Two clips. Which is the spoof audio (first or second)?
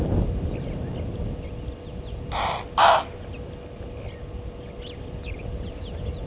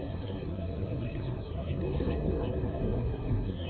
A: second